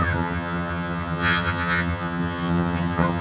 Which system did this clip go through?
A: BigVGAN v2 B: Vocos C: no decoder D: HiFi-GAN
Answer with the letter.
D